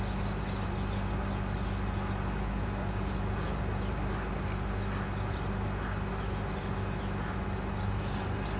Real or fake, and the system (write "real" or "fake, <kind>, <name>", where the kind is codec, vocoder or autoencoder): real